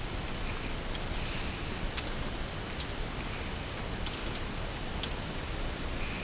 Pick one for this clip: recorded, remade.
recorded